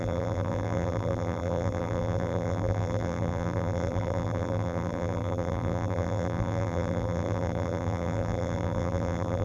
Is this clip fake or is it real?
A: fake